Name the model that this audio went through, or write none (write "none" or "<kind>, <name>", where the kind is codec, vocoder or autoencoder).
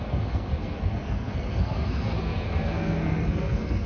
codec, SNAC